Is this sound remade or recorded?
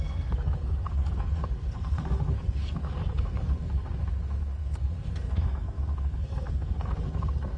remade